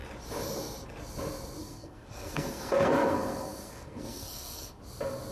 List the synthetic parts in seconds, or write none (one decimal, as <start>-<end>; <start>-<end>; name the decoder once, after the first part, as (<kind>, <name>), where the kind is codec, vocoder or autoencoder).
1.6-4.8 (codec, SNAC)